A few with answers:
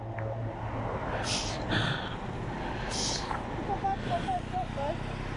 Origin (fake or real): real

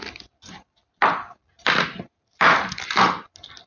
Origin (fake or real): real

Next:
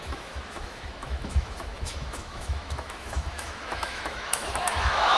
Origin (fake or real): fake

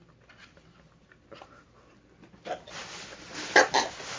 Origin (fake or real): real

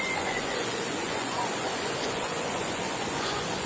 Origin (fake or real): fake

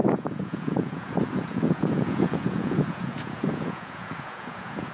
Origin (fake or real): fake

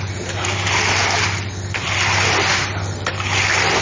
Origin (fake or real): real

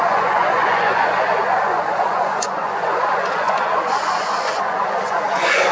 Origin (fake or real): fake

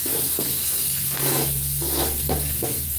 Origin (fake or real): fake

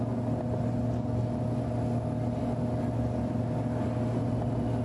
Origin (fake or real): real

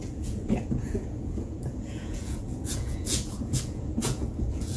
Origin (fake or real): fake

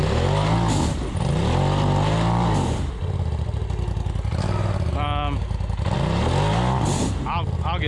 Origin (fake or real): real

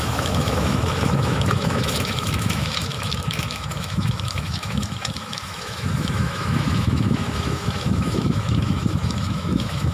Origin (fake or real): fake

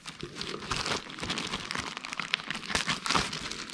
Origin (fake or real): real